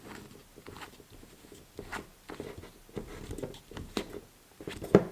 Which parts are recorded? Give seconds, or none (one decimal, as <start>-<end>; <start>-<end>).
0.0-5.1